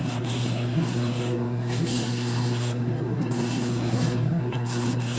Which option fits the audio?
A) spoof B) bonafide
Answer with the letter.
A